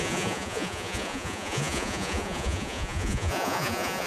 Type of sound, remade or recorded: remade